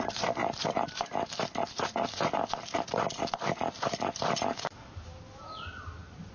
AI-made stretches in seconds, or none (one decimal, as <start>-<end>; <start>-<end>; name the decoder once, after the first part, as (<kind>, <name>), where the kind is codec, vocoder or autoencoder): none